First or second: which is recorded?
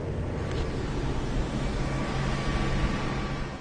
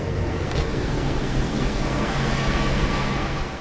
first